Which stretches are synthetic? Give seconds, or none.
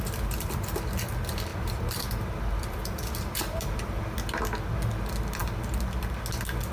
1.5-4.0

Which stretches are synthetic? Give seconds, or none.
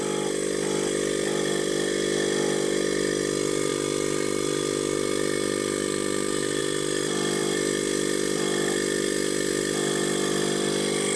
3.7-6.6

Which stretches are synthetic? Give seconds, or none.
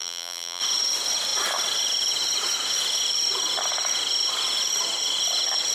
0.0-0.6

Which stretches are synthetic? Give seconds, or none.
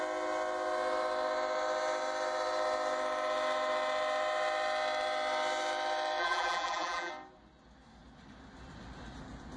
6.2-7.1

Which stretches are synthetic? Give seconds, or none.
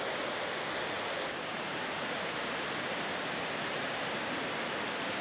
1.5-4.5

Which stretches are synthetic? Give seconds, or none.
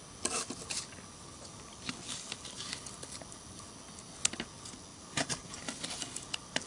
2.7-3.5; 4.9-6.3